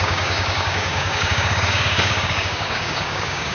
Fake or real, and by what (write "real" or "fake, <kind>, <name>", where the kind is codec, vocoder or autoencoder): fake, codec, DAC